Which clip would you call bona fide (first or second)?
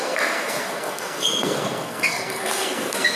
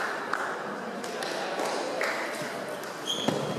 second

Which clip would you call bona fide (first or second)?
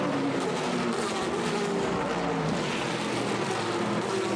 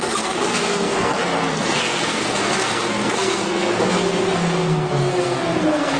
first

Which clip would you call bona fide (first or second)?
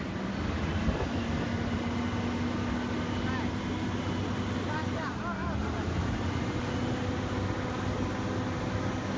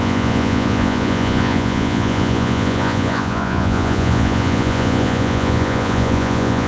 first